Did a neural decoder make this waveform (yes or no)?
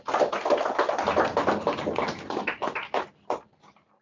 no